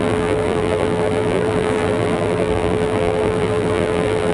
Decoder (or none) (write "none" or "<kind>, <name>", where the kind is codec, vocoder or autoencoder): vocoder, BigVGAN v2